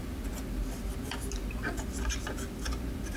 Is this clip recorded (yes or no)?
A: yes